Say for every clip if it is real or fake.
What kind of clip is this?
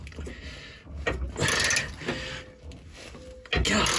real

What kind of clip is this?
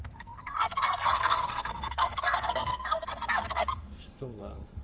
fake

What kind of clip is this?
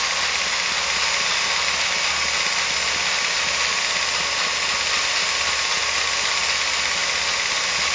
real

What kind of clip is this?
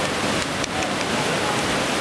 real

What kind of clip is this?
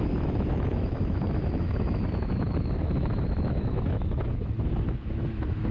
fake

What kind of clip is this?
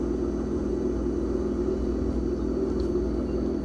real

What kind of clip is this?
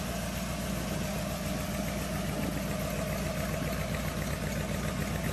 real